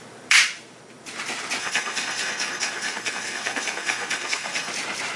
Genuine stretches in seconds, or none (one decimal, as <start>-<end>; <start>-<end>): 0.0-1.6; 4.7-5.2